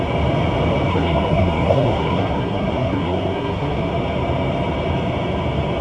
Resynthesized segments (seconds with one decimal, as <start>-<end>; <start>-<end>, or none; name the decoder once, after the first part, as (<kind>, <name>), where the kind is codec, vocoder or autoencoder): 0.9-3.9 (codec, SNAC)